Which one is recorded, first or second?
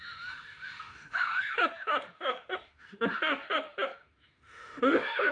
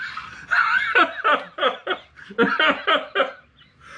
second